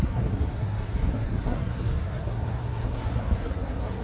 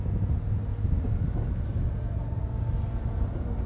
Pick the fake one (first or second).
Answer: first